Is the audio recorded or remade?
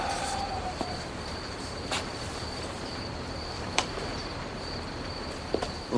remade